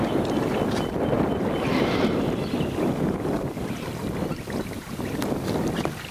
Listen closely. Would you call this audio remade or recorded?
recorded